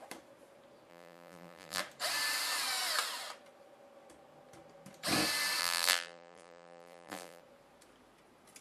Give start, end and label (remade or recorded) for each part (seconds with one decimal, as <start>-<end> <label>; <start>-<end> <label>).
0.0-0.9 recorded; 0.9-1.8 remade; 1.8-5.6 recorded; 5.6-7.4 remade; 7.4-8.6 recorded